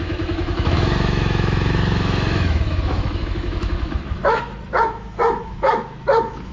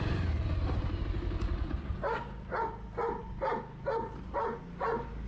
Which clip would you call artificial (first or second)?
first